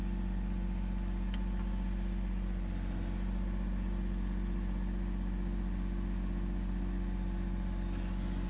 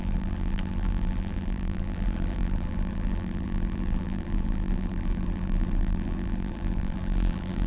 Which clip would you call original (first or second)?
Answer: first